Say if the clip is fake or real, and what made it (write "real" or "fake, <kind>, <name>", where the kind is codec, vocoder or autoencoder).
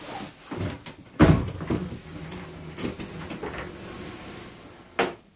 real